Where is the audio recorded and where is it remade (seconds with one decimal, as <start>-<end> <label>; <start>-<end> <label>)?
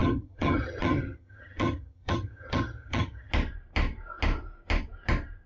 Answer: 0.0-3.3 remade; 3.3-5.5 recorded